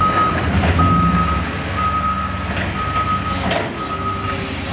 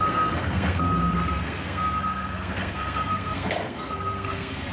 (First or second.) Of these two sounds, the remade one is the second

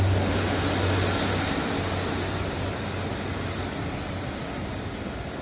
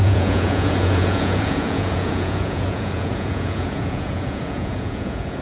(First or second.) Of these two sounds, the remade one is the second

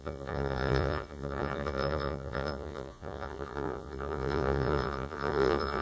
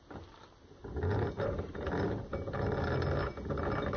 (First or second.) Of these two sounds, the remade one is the first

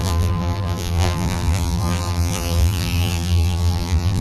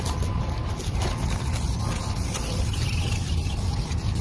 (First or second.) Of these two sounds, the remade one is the first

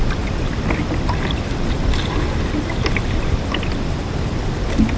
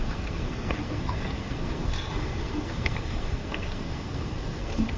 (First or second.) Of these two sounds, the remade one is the second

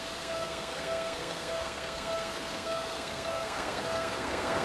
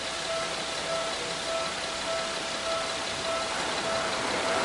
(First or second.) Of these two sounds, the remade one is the first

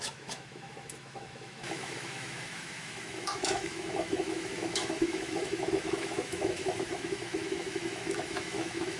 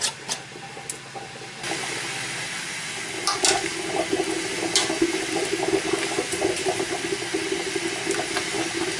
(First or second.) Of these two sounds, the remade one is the first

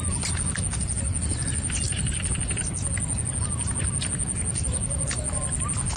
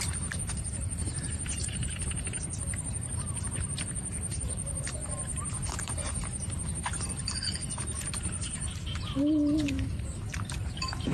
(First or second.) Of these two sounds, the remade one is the second